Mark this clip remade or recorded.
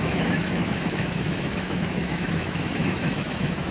remade